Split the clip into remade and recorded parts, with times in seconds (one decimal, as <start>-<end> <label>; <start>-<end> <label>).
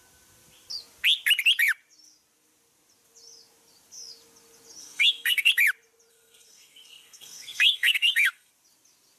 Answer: 0.0-4.8 recorded; 4.8-5.5 remade; 5.5-6.1 recorded; 6.1-8.5 remade; 8.5-9.2 recorded